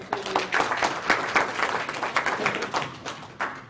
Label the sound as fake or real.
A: real